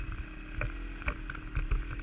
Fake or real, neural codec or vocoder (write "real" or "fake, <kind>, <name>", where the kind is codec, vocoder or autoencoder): real